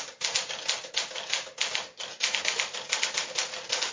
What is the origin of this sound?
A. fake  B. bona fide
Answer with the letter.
B